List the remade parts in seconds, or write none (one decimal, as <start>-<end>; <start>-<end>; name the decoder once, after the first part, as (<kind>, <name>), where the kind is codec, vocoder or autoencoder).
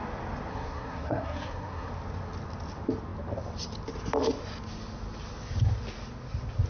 0.5-1.9 (codec, SNAC)